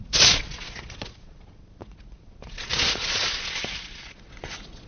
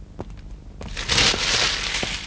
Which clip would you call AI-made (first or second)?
first